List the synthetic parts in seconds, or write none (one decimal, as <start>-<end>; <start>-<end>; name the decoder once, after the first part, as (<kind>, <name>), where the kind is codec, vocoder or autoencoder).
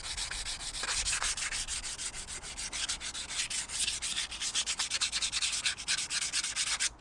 none